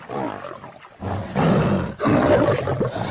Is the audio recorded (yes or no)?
yes